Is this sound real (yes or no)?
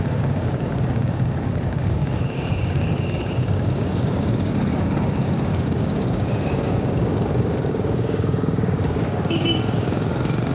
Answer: no